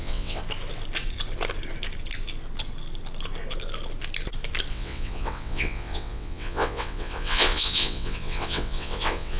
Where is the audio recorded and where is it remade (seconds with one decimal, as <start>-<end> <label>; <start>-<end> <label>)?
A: 0.0-0.4 remade; 0.4-4.7 recorded; 4.7-9.4 remade